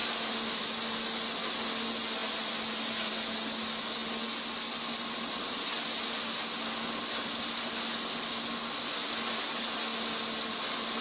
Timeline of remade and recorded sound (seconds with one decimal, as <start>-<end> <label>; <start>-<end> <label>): 0.0-11.0 recorded